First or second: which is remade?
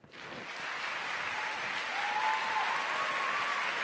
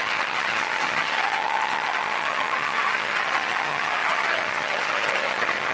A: second